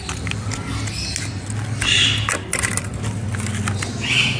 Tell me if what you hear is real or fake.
real